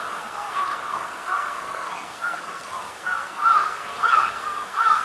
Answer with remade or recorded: remade